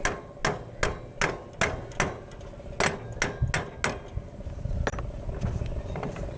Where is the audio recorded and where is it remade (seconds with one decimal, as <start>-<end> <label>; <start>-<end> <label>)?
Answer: 0.0-6.4 recorded

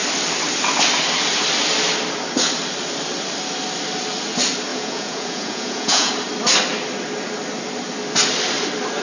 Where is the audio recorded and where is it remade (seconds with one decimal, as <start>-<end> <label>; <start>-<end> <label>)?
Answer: 0.0-4.7 recorded; 4.7-6.1 remade; 6.1-9.0 recorded

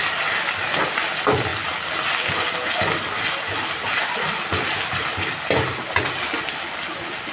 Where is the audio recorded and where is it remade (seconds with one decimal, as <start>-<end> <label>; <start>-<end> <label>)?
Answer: 0.0-7.3 recorded

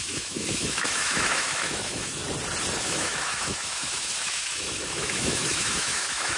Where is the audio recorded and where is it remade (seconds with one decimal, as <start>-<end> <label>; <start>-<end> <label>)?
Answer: 0.0-2.2 remade; 2.2-2.8 recorded; 2.8-6.4 remade

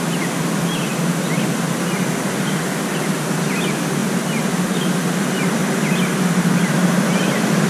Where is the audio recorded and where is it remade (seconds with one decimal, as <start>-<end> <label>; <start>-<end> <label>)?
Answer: 0.0-7.7 recorded

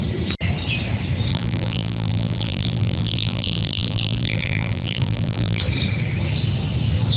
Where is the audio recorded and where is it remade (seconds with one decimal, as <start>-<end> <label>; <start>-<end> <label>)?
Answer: 0.0-1.3 recorded; 1.3-5.6 remade; 5.6-7.2 recorded

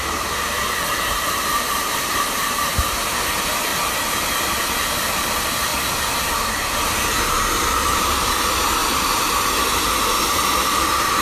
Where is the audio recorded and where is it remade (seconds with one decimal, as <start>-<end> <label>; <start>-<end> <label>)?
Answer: 0.0-3.7 remade; 3.7-5.2 recorded; 5.2-5.7 remade; 5.7-6.3 recorded; 6.3-11.2 remade

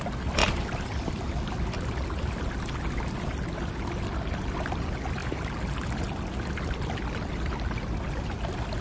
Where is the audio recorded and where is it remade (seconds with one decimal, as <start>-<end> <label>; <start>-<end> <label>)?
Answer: 0.0-8.8 recorded